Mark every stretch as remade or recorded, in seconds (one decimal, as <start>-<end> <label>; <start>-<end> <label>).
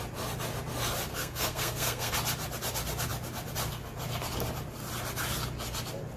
0.0-1.1 recorded; 1.1-2.1 remade; 2.1-6.2 recorded